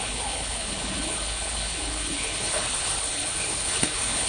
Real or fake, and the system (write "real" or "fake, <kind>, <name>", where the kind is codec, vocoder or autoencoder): fake, codec, HILCodec